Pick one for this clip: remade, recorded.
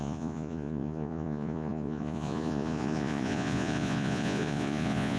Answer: remade